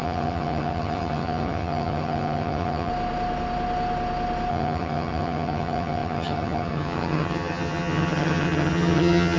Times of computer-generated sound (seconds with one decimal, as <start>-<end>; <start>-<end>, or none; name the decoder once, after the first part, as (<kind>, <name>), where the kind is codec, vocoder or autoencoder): 0.0-2.9 (vocoder, HiFi-GAN); 4.5-9.4